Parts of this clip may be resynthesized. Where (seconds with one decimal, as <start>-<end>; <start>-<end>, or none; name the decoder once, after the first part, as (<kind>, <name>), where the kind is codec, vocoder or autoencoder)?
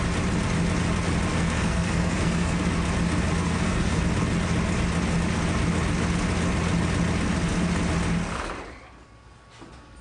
1.3-2.6 (codec, SNAC); 3.4-4.0